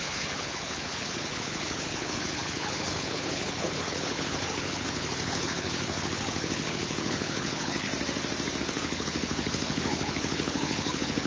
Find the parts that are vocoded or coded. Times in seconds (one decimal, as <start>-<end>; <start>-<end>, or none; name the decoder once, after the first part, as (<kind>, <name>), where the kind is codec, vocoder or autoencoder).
0.0-7.9 (codec, HILCodec); 8.6-11.3